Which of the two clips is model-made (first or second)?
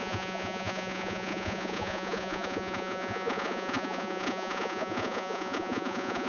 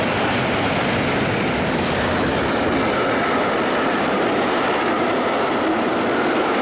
first